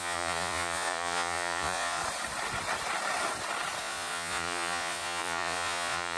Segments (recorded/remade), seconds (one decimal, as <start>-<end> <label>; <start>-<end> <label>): 0.0-2.0 remade; 2.0-3.8 recorded; 3.8-6.2 remade